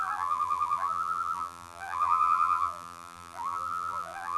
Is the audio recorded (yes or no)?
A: no